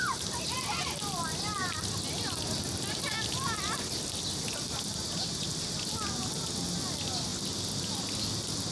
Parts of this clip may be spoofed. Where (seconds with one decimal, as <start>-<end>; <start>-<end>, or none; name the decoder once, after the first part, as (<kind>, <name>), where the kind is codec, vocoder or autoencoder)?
none